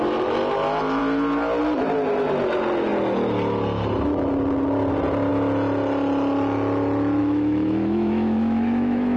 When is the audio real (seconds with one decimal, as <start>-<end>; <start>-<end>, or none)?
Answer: 0.0-7.2